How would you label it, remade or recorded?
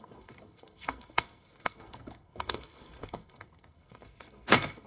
remade